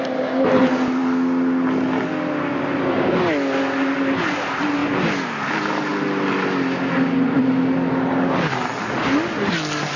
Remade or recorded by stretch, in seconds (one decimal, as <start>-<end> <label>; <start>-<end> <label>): 0.0-10.0 recorded